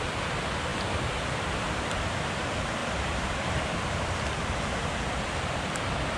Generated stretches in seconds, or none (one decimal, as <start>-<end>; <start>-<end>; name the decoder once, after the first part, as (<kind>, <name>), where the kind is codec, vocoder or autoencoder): 2.8-4.1 (vocoder, BigVGAN v2)